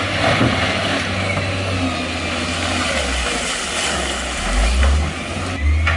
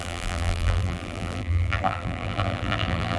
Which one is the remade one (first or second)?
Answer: second